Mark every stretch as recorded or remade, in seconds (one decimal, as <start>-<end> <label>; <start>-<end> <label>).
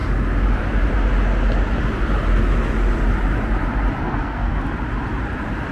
0.0-4.0 recorded; 4.0-4.6 remade; 4.6-5.7 recorded